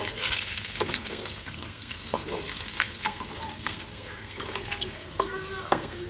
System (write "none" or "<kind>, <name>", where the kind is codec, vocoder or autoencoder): codec, SNAC